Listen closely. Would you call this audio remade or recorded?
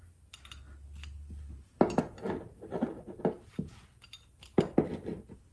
recorded